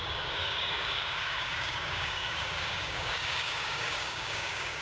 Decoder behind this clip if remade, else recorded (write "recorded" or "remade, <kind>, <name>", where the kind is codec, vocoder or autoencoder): remade, codec, DAC